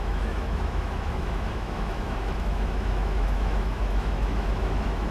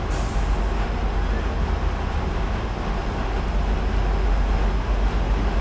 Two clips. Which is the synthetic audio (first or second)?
first